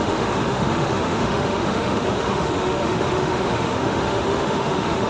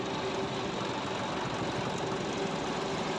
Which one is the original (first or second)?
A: second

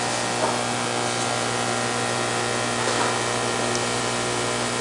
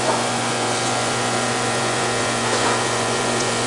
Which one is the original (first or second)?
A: first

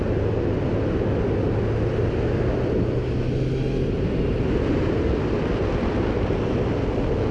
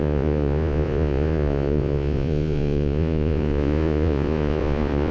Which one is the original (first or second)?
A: first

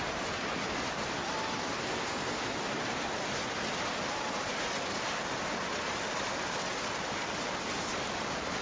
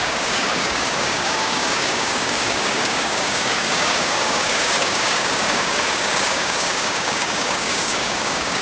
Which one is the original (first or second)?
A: first